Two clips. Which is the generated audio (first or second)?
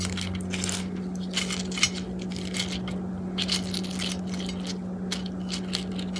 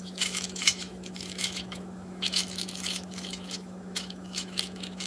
second